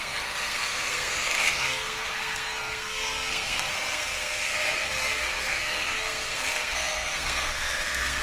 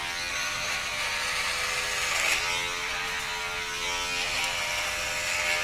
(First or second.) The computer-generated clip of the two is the first